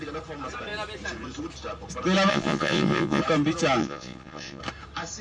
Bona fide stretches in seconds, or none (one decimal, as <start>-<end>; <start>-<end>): 0.0-2.3; 3.2-3.8; 4.6-5.2